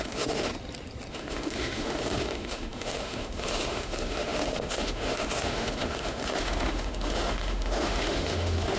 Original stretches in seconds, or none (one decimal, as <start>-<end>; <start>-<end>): 0.5-1.1